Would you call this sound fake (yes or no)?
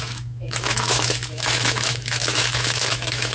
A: yes